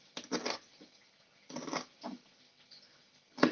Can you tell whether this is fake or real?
real